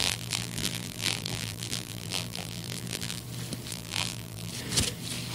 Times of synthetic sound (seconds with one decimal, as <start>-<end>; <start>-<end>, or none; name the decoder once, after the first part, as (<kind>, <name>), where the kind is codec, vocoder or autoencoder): 0.0-3.2 (vocoder, BigVGAN v2); 3.7-4.5

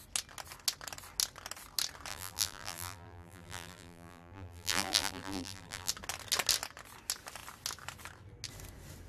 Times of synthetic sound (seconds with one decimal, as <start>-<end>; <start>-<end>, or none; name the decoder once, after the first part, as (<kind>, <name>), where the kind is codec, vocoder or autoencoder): 2.1-5.9 (vocoder, BigVGAN v2)

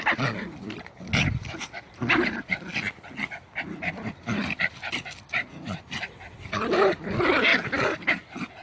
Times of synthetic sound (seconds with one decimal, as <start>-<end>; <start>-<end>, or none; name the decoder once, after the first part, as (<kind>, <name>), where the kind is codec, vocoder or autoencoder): 7.5-8.1 (vocoder, BigVGAN v2)

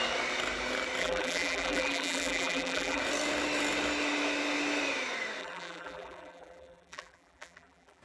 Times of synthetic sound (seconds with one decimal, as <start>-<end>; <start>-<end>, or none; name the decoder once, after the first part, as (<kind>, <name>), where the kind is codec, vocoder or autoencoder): 1.0-3.0 (vocoder, BigVGAN v2); 5.4-8.0

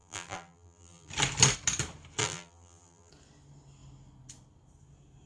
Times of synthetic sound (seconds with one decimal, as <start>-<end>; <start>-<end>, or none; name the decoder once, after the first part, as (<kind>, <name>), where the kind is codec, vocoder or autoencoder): 0.0-1.1 (vocoder, BigVGAN v2); 2.2-3.1

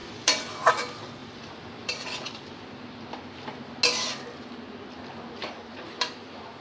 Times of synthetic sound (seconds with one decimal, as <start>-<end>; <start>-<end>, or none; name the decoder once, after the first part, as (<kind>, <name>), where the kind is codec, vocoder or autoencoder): 0.0-0.7 (vocoder, BigVGAN v2); 1.2-2.8; 4.1-5.0; 5.4-6.6

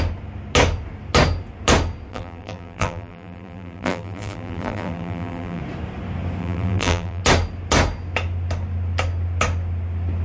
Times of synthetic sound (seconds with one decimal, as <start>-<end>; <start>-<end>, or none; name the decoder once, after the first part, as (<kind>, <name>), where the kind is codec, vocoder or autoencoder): 2.1-5.6 (vocoder, BigVGAN v2); 6.4-7.2

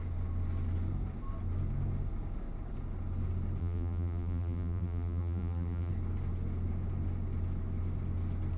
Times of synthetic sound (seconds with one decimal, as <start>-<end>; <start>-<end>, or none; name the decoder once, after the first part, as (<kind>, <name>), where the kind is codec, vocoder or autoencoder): 3.6-5.9 (vocoder, BigVGAN v2)